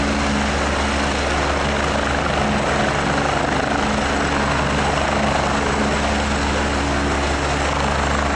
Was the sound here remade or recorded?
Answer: recorded